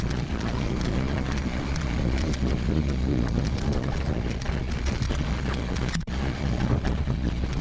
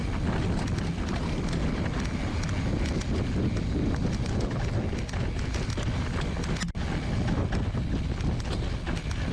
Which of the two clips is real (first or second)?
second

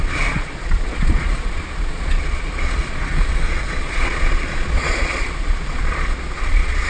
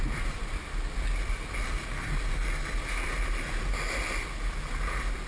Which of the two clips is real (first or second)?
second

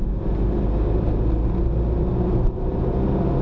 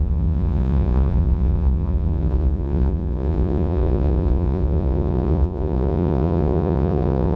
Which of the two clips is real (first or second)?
first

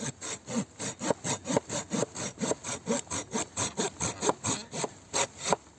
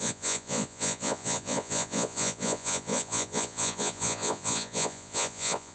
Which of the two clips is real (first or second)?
first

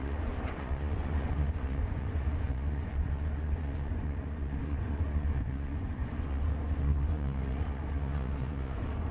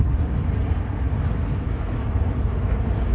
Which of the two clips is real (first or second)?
second